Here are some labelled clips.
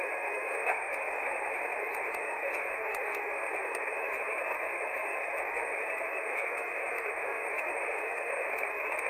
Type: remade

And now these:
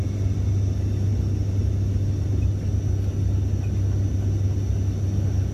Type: recorded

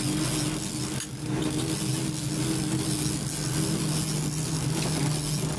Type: recorded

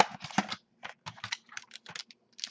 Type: recorded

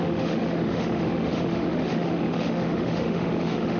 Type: remade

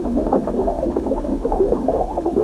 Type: remade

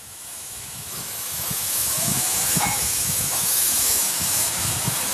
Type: remade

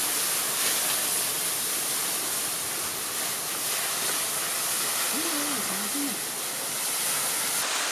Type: recorded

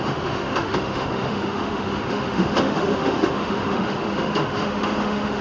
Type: remade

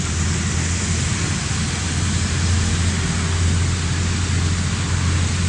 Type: recorded